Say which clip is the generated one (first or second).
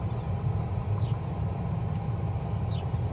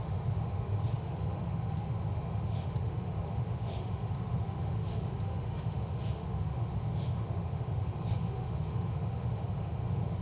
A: second